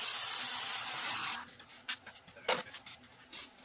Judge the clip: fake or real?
fake